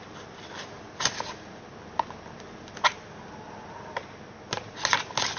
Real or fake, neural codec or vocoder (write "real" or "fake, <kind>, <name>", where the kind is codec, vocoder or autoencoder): real